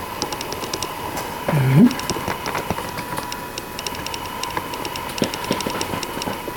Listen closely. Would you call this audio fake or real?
real